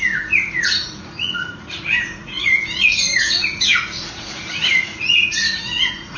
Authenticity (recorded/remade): remade